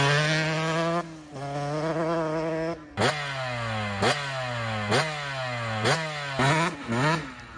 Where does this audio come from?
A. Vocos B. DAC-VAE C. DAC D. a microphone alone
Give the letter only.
D